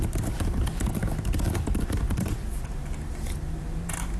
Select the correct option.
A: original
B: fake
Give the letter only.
A